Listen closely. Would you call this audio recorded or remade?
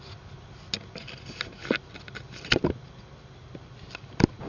recorded